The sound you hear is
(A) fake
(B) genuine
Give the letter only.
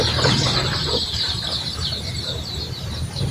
A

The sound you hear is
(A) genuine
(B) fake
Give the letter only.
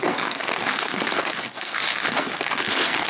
B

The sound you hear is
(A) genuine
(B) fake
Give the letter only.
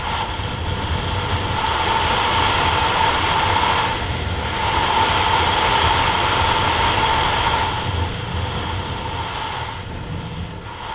A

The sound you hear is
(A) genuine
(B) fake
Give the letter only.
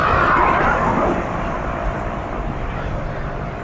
A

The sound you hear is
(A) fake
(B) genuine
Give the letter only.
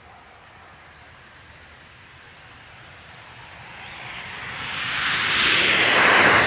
B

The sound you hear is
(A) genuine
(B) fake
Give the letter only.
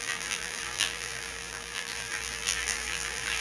B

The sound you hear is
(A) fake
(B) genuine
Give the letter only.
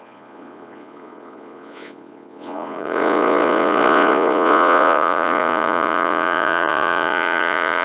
A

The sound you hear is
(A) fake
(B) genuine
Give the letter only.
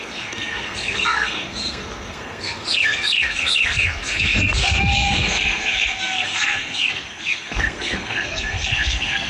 A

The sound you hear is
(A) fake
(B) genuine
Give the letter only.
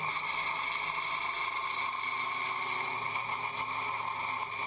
B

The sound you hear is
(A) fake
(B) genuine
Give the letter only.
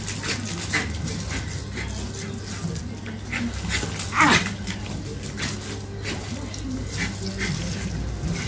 B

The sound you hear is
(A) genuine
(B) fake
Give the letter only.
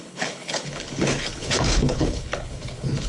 B